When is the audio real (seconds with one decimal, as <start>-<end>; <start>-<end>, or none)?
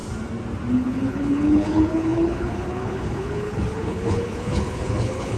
0.0-0.7